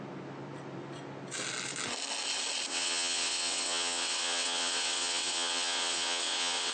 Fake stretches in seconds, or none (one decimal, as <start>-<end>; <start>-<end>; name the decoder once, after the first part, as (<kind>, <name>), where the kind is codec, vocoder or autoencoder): 2.7-6.7 (vocoder, WaveNeXt)